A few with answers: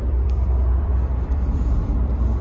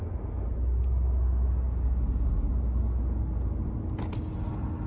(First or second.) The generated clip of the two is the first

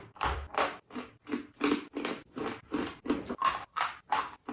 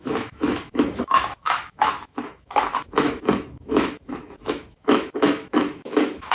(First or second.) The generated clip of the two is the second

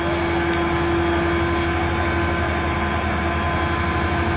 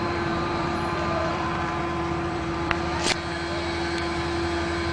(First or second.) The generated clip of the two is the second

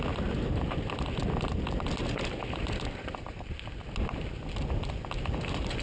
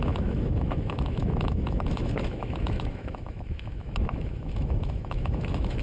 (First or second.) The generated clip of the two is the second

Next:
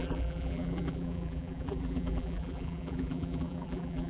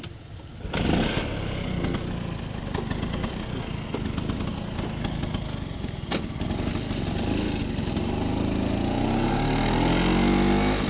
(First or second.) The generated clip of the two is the first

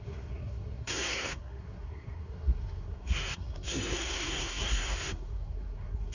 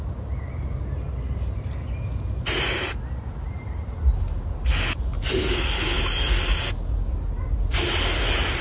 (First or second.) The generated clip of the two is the first